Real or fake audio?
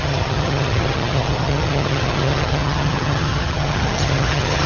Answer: fake